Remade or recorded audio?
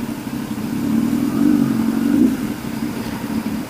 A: recorded